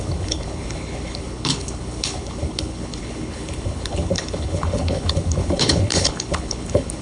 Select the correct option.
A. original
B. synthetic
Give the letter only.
B